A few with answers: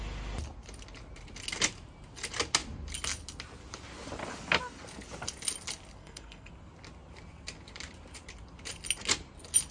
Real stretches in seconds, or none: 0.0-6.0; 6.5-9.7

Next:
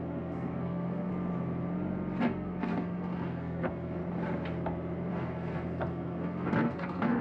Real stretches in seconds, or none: 1.1-2.2; 4.0-5.1